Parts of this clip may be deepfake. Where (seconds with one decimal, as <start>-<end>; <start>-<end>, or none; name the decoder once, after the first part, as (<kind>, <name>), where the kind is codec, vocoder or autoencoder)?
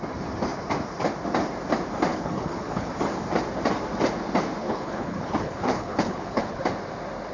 2.1-2.9 (codec, HILCodec); 4.6-6.6